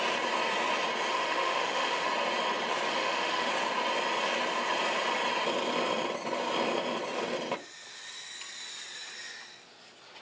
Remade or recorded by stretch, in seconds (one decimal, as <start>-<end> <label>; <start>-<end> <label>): 0.0-1.1 recorded; 1.1-2.1 remade; 2.1-2.9 recorded; 2.9-3.5 remade; 3.5-10.2 recorded